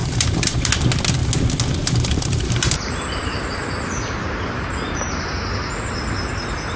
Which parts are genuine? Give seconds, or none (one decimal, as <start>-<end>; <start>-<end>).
0.7-1.8; 3.6-6.8